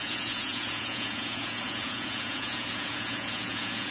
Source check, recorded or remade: remade